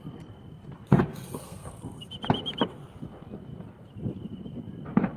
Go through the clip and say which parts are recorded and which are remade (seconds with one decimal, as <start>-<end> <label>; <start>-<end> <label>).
0.0-1.1 recorded; 1.1-1.7 remade; 1.7-5.2 recorded